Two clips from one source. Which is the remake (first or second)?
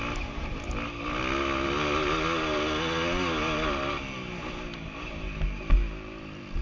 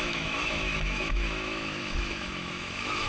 second